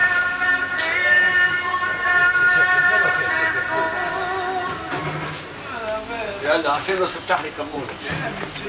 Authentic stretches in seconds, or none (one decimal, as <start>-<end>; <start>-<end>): 0.0-2.8; 3.4-7.7